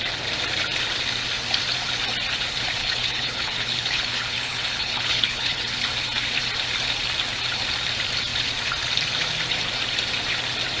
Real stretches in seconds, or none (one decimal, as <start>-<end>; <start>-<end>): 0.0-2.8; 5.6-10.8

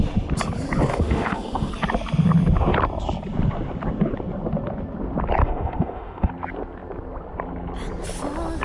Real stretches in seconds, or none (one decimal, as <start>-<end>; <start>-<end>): 0.0-0.9; 1.7-5.4; 6.3-8.6

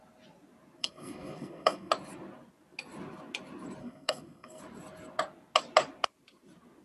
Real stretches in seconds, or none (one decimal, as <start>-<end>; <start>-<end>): 0.0-0.8; 1.9-3.8; 4.6-6.8

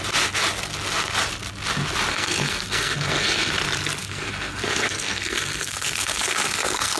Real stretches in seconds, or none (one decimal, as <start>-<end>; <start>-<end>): 0.0-2.1; 3.5-4.0

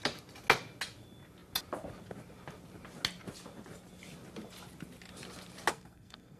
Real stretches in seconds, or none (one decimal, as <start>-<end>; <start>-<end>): 0.0-5.7

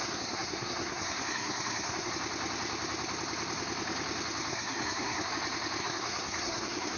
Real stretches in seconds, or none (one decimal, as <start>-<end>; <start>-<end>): 2.1-4.5; 5.3-5.8

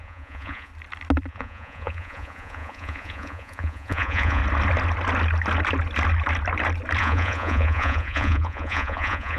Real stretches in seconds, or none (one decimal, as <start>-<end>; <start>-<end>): 0.7-1.3; 4.4-7.0

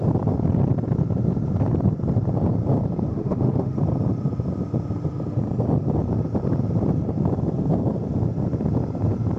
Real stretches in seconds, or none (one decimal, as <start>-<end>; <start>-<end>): 0.0-3.1; 3.8-9.4